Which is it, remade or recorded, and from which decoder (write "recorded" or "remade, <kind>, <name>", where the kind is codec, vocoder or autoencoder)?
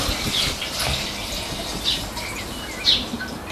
recorded